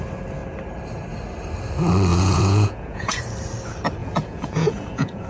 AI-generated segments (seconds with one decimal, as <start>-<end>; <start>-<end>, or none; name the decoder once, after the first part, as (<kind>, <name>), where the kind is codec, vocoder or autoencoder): 2.1-3.2 (vocoder, Vocos); 4.0-5.3